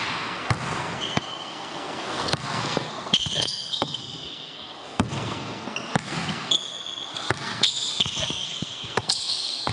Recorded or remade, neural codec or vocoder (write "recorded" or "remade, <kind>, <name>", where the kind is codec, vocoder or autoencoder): remade, codec, SNAC